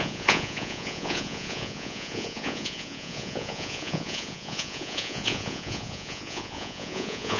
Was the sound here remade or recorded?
remade